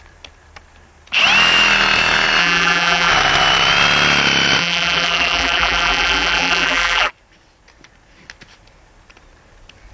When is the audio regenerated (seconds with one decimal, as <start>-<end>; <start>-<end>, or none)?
2.4-3.1; 4.6-7.1